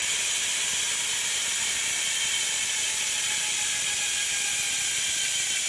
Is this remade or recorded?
recorded